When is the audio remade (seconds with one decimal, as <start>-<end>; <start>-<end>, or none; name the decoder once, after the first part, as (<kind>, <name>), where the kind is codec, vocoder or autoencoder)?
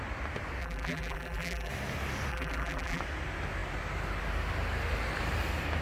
0.6-1.7 (vocoder, BigVGAN v2); 2.3-3.0